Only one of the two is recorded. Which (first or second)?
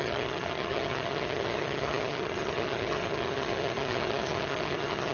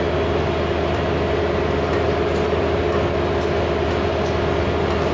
second